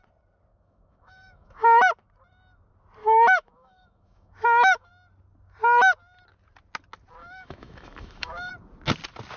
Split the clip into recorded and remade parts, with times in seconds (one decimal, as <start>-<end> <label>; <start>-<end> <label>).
0.0-0.5 recorded; 0.5-1.8 remade; 1.8-3.0 recorded; 3.0-4.9 remade; 4.9-7.2 recorded; 7.2-8.5 remade; 8.5-9.4 recorded